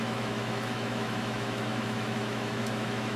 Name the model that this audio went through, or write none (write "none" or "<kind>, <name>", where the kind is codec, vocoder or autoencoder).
autoencoder, DAC-VAE